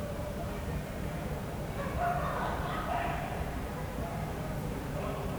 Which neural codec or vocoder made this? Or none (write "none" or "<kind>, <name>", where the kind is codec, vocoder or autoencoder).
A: vocoder, BigVGAN v2